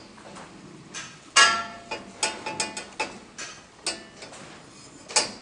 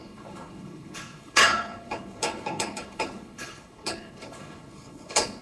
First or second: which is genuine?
first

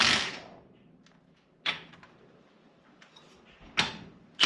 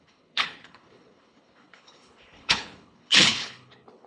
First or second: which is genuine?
first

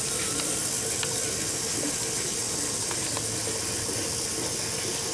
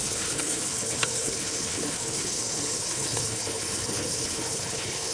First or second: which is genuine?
first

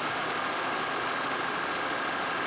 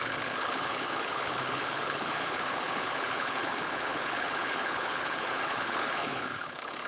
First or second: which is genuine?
first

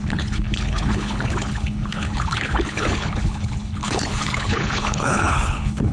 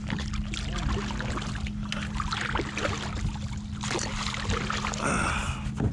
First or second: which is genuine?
second